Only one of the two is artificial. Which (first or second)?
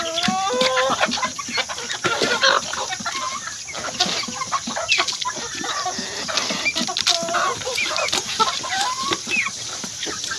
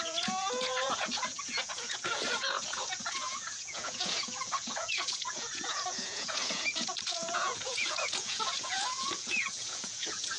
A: second